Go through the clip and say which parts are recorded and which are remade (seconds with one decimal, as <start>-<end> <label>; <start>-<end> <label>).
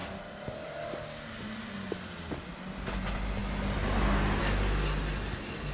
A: 0.0-5.7 recorded